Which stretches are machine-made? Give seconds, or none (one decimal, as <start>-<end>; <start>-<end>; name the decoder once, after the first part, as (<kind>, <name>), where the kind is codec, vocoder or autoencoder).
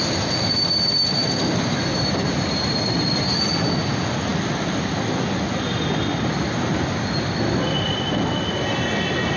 none